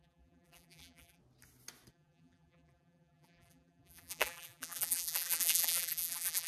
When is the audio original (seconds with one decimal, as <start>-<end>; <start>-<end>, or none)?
1.2-1.9